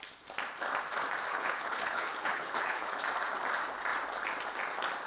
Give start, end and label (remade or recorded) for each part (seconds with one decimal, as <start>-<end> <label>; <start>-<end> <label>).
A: 0.0-1.3 recorded; 1.3-3.0 remade; 3.0-5.1 recorded